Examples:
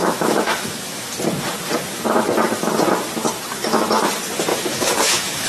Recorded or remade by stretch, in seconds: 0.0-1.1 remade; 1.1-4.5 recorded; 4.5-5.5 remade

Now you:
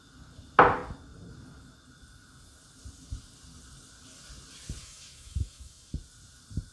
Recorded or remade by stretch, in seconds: 0.0-4.8 recorded; 4.8-5.9 remade; 5.9-6.7 recorded

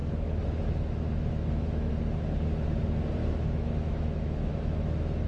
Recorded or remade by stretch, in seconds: 0.0-1.9 remade; 1.9-3.2 recorded; 3.2-5.3 remade